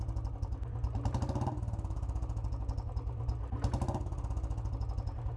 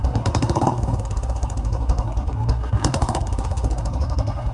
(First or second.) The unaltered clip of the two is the first